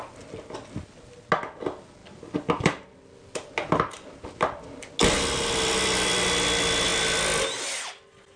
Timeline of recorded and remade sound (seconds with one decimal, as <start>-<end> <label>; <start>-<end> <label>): 0.0-8.4 recorded